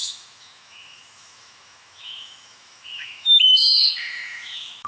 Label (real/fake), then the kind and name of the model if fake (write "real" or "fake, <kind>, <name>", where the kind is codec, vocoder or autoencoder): fake, autoencoder, DAC-VAE